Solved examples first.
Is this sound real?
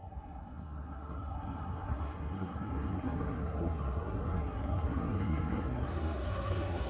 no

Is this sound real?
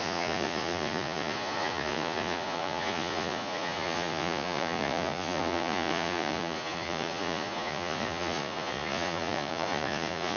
no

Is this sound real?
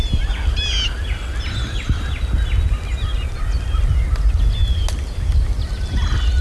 yes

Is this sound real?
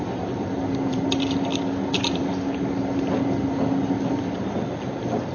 no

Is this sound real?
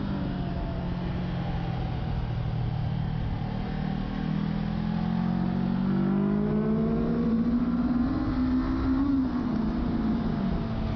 yes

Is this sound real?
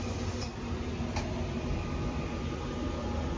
yes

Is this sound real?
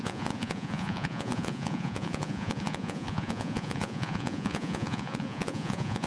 no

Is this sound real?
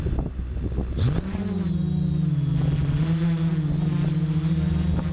yes